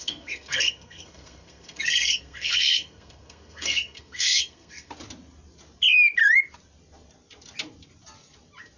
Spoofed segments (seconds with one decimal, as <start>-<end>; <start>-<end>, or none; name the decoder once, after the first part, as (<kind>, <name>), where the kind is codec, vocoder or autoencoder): 0.0-4.9 (codec, SNAC)